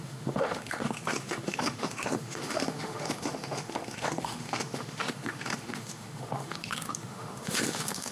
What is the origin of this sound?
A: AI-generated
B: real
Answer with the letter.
A